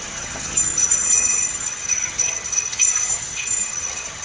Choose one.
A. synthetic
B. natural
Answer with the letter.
A